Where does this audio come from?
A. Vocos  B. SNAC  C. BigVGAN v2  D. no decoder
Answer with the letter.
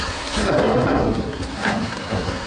B